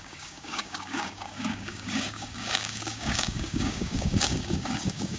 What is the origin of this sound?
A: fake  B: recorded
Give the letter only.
A